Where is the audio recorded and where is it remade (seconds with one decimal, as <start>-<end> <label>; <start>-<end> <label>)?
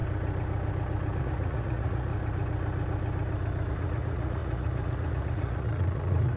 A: 0.0-1.2 recorded; 1.2-2.1 remade; 2.1-3.7 recorded; 3.7-6.4 remade